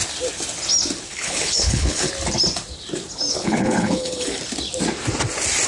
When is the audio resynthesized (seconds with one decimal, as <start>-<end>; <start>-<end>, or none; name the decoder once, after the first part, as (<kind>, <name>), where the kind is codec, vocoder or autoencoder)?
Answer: 1.1-2.1 (codec, HILCodec); 3.3-4.4